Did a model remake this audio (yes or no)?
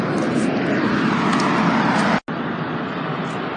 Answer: no